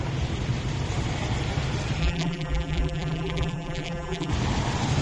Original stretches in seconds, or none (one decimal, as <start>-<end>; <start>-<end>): 0.0-2.0; 4.3-5.0

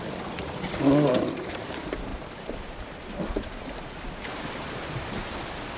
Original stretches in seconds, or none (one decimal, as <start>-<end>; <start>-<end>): 0.0-5.8

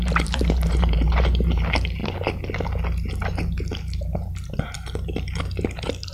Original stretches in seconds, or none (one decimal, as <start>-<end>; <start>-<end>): 2.0-6.1

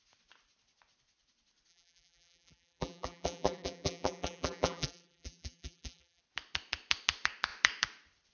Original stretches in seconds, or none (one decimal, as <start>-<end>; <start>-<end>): 0.0-1.7; 6.2-8.3

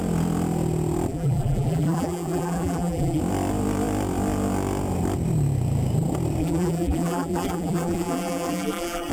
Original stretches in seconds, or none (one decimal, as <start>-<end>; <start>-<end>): 0.0-1.1; 3.2-6.4

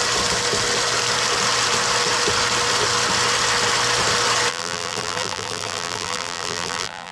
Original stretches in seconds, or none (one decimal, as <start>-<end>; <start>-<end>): 0.0-4.5

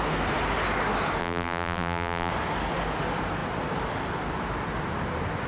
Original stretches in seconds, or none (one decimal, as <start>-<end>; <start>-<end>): 0.0-1.2; 2.3-5.5

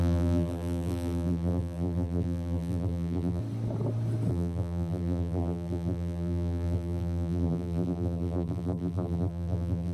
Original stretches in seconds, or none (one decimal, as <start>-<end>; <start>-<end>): 3.4-4.3